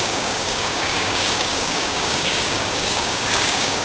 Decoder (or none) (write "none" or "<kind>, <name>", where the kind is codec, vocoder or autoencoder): codec, DAC